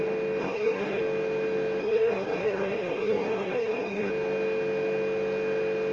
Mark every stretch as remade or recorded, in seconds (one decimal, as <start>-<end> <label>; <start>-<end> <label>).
0.0-0.4 recorded; 0.4-1.0 remade; 1.0-1.8 recorded; 1.8-4.1 remade; 4.1-5.9 recorded